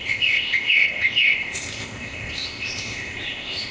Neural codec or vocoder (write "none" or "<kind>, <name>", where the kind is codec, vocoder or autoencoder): codec, ZipCodec